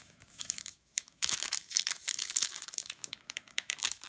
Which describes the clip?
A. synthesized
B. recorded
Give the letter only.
A